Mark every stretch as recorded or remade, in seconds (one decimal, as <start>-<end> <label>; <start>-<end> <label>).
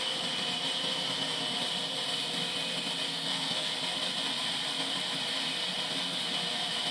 0.0-3.1 recorded; 3.1-3.7 remade; 3.7-6.9 recorded